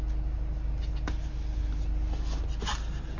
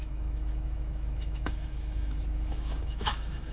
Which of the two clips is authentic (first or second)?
first